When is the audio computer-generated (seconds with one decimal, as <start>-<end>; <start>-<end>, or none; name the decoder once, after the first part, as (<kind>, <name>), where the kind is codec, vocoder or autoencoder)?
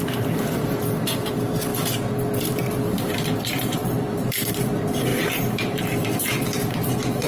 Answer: 0.0-1.7 (vocoder, BigVGAN v2); 2.4-7.3